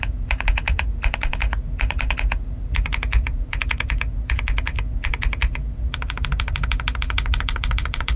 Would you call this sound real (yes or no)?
no